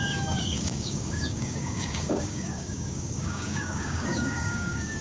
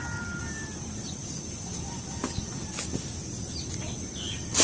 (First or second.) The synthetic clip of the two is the first